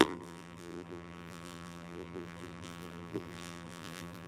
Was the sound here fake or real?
fake